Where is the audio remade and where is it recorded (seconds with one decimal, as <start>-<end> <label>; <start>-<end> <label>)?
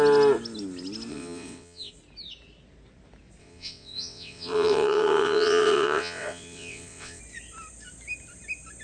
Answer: 0.0-1.1 recorded; 1.1-1.9 remade; 1.9-3.4 recorded; 3.4-7.2 remade; 7.2-8.8 recorded